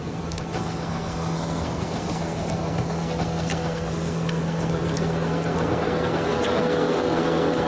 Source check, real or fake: fake